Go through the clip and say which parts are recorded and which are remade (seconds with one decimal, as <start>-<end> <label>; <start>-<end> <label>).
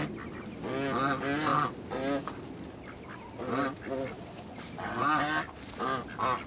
0.0-6.5 recorded